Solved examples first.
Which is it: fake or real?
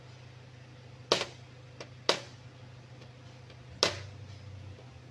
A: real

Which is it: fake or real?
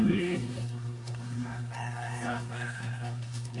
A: fake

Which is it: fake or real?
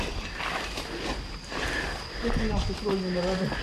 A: real